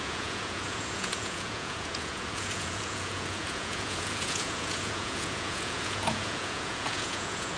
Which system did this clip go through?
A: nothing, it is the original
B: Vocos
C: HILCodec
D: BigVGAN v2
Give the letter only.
B